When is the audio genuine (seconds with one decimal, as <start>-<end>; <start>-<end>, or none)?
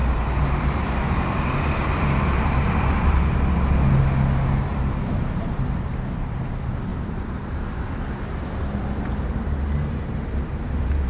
3.2-4.7; 5.8-6.9